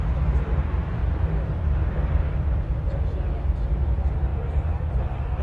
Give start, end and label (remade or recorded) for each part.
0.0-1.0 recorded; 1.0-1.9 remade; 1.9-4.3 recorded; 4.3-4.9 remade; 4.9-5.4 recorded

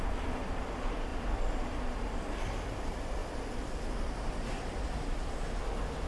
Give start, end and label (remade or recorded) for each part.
0.0-1.1 recorded; 1.1-1.8 remade; 1.8-3.2 recorded; 3.2-3.8 remade; 3.8-6.1 recorded

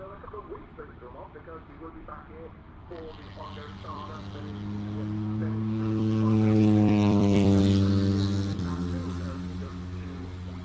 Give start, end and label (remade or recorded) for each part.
0.0-2.8 recorded; 2.8-4.4 remade; 4.4-5.4 recorded; 5.4-7.6 remade; 7.6-9.0 recorded; 9.0-9.6 remade; 9.6-10.6 recorded

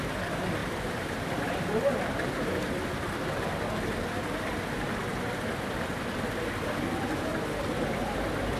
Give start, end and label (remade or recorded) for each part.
0.0-0.6 recorded; 0.6-4.6 remade; 4.6-7.3 recorded; 7.3-8.0 remade; 8.0-8.6 recorded

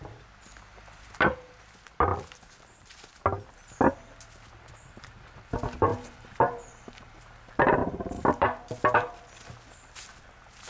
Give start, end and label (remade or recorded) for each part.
0.0-5.9 recorded; 5.9-7.2 remade; 7.2-7.8 recorded; 7.8-8.4 remade; 8.4-10.7 recorded

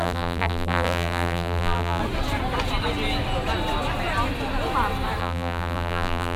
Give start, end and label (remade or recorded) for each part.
0.0-2.0 remade; 2.0-5.2 recorded; 5.2-6.4 remade